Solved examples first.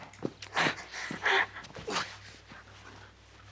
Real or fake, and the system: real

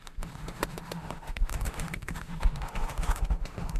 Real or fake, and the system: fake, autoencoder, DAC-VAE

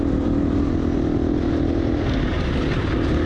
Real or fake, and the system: real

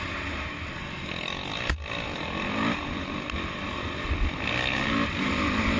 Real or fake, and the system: real